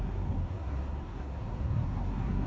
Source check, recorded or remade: remade